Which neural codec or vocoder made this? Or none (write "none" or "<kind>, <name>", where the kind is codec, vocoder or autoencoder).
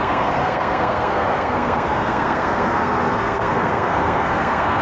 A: codec, SNAC